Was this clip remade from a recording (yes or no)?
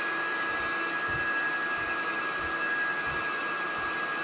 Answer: no